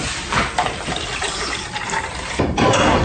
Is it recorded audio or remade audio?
recorded